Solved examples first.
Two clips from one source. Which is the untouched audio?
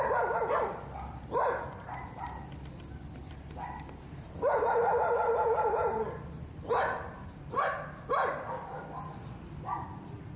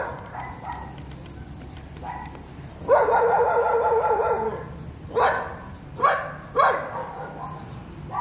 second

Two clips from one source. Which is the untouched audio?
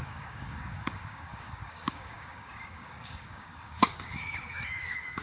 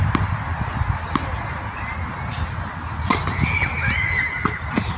second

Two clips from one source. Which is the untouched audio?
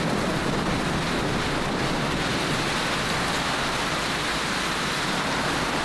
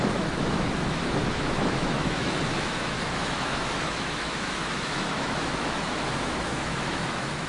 first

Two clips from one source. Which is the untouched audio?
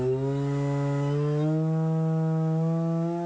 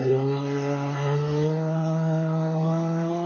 first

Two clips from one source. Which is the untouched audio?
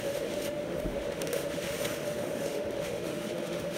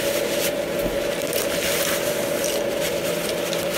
second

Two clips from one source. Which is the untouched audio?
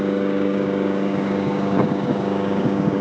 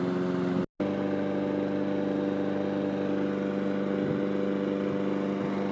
second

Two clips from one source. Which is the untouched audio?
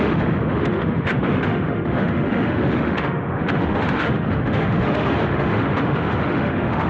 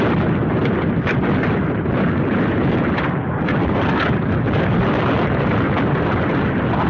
second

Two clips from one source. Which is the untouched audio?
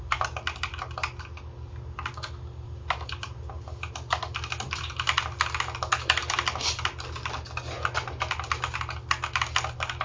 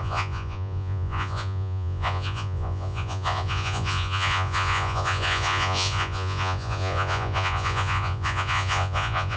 first